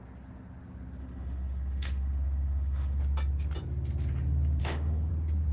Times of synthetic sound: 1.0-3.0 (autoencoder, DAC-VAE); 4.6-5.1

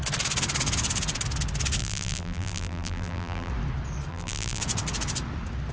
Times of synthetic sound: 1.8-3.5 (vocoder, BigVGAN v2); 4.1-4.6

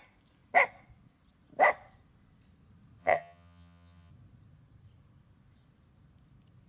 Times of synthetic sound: 3.0-4.1 (vocoder, HiFi-GAN)